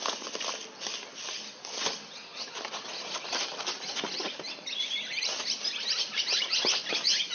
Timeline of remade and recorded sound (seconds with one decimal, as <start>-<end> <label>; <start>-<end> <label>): 0.0-7.3 recorded